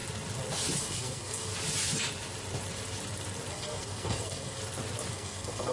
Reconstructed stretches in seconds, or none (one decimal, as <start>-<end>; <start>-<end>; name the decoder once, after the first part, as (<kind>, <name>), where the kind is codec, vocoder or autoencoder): 0.8-1.5 (codec, SNAC); 3.5-4.6; 5.1-5.7